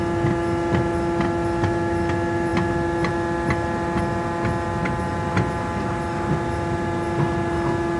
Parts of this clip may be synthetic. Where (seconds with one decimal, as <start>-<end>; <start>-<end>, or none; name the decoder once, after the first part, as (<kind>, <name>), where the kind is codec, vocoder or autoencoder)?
none